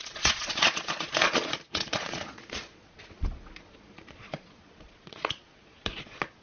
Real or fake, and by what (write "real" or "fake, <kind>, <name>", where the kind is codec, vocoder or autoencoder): fake, vocoder, Vocos